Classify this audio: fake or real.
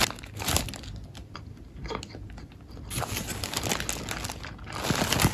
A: real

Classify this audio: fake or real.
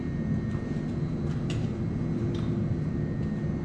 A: real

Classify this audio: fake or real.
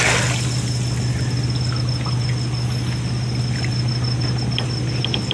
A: real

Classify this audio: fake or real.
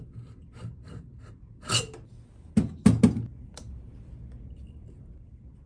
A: real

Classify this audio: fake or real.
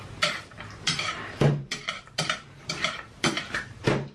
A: fake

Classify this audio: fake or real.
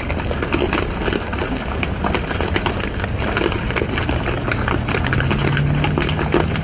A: real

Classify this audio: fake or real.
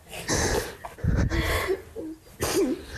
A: real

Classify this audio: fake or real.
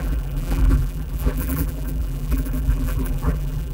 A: fake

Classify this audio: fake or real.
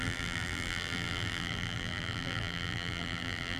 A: fake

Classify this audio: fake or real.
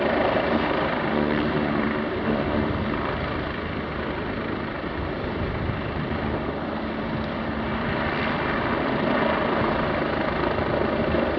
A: fake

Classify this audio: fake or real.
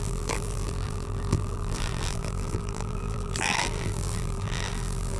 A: fake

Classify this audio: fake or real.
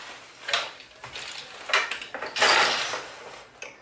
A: real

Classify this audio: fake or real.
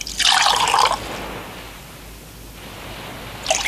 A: real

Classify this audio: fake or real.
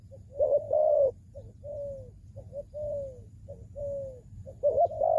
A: real